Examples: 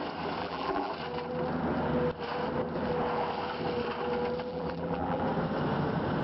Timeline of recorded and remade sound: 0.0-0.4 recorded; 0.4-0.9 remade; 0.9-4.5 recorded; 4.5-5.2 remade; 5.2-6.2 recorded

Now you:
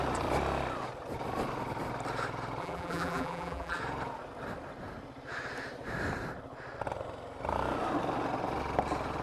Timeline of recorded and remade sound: 0.0-2.6 recorded; 2.6-3.8 remade; 3.8-9.2 recorded

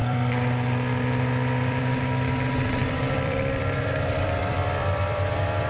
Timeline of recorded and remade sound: 0.0-1.8 remade; 1.8-2.8 recorded; 2.8-5.7 remade